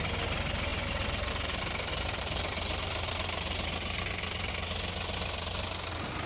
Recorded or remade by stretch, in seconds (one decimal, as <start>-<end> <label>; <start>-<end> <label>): 0.0-0.7 recorded; 0.7-4.5 remade; 4.5-6.3 recorded